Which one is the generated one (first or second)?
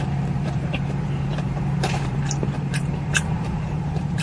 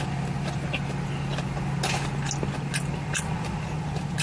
first